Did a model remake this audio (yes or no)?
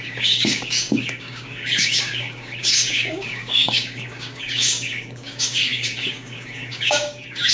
yes